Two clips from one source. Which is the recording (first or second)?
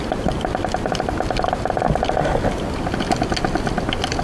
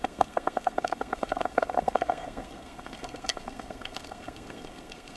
first